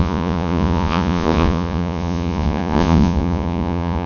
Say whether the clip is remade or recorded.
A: remade